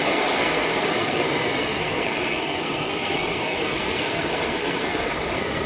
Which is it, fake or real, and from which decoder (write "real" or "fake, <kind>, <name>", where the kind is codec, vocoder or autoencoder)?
fake, codec, SNAC